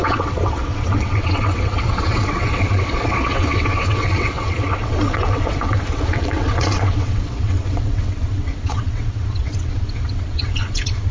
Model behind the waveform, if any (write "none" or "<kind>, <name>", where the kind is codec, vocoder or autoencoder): vocoder, WaveNeXt